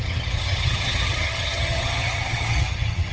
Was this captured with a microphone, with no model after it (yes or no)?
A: no